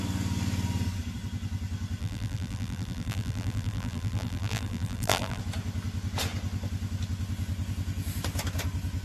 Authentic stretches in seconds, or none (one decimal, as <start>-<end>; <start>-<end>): 0.0-2.0; 5.4-9.0

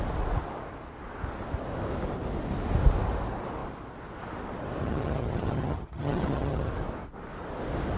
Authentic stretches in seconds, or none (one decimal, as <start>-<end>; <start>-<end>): 0.0-4.8; 6.7-8.0

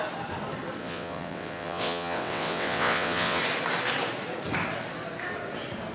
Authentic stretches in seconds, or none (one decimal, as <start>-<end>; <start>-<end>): 0.0-0.8; 3.4-5.9

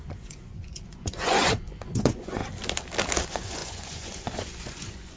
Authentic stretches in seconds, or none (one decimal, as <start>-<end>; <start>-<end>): 2.4-3.2

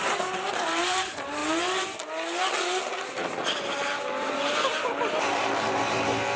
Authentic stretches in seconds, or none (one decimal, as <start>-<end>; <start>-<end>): 1.4-5.2

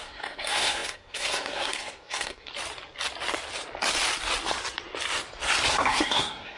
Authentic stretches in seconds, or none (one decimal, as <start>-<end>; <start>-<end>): 2.5-5.7

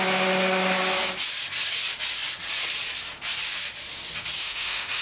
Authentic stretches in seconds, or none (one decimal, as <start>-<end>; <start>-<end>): 0.0-4.4

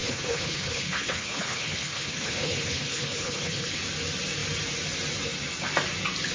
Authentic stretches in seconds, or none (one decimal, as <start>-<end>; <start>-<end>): 3.8-6.3